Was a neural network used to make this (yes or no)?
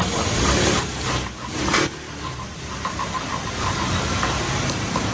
no